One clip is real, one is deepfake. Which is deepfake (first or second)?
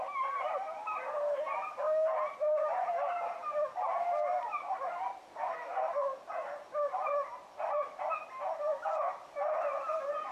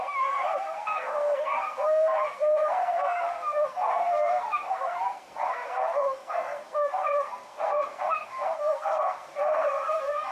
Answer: second